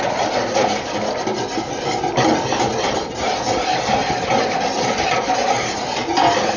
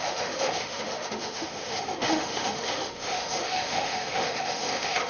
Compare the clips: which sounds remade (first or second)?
second